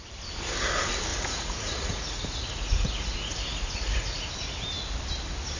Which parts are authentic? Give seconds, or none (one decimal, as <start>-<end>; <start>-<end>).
0.0-1.1; 4.3-5.6